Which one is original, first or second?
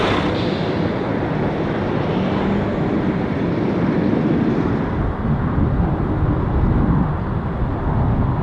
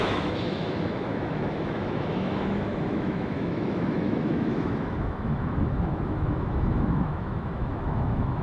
first